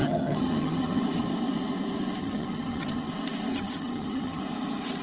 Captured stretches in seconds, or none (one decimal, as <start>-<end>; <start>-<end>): 1.0-2.2; 3.1-3.5; 4.4-5.0